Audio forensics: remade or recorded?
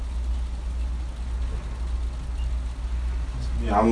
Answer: recorded